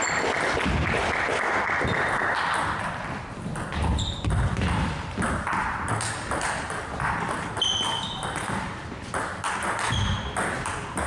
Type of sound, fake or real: real